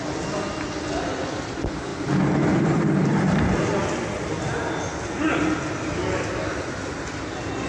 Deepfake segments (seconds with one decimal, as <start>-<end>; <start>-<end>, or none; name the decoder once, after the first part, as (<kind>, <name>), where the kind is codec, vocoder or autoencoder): none